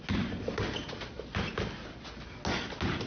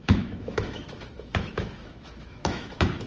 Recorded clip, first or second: first